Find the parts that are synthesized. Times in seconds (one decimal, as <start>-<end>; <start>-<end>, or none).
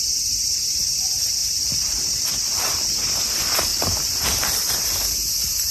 0.0-5.7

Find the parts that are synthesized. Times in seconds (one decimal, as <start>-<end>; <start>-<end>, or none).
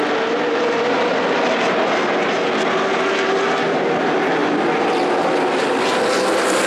none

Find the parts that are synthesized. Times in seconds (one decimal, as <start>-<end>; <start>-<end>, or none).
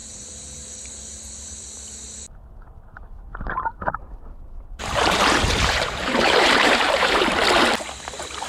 0.0-0.6; 3.3-7.2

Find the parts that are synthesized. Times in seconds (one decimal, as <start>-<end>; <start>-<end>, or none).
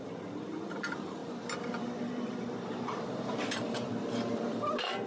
0.0-1.2; 1.8-5.1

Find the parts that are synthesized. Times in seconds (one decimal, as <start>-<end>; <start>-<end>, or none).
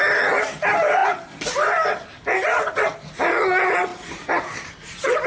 3.9-4.7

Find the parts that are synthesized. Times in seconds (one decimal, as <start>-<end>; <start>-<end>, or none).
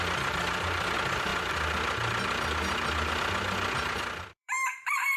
0.0-1.3; 4.0-5.2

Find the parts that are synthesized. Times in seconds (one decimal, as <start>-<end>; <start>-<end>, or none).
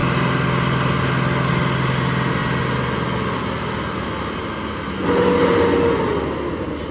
none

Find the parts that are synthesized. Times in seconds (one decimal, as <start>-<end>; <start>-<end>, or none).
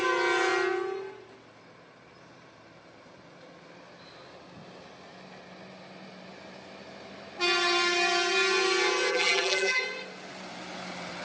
9.1-9.8